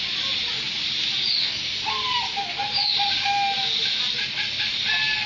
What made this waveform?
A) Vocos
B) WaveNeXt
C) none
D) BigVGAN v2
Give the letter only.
C